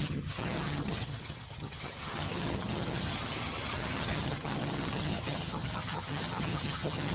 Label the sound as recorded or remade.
remade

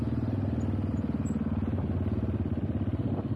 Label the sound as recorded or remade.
recorded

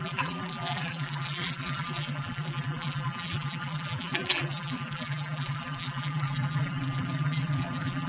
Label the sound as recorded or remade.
remade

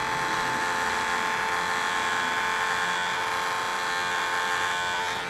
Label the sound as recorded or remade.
recorded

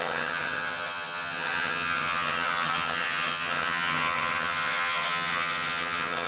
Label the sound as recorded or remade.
remade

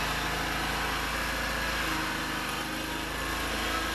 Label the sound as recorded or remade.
recorded